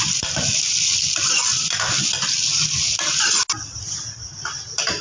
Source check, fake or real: real